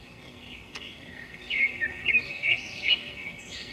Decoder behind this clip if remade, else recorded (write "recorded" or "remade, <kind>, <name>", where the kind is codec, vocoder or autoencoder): remade, codec, SNAC